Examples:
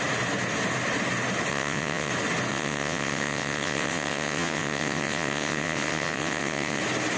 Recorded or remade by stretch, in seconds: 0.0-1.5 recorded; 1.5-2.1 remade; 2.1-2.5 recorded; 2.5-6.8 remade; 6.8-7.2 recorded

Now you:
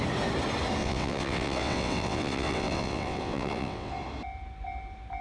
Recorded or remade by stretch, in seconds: 0.0-0.8 recorded; 0.8-3.9 remade; 3.9-5.2 recorded

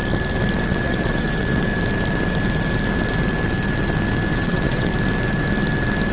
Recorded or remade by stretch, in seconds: 0.0-0.6 recorded; 0.6-1.7 remade; 1.7-4.3 recorded; 4.3-4.9 remade; 4.9-6.1 recorded

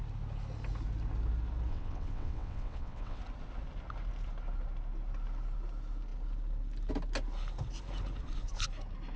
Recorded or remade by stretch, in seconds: 0.0-1.7 recorded; 1.7-3.2 remade; 3.2-9.2 recorded